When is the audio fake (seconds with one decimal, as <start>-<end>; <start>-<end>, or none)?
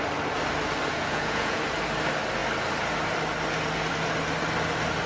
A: 0.9-1.6